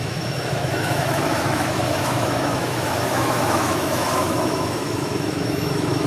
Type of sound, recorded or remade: remade